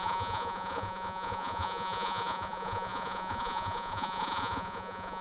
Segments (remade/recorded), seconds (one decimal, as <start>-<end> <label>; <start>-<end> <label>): 0.0-5.2 remade